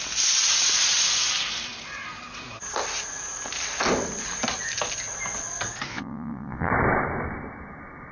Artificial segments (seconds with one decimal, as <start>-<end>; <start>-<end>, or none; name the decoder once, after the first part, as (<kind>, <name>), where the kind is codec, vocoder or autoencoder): 5.9-6.7 (vocoder, WaveNeXt)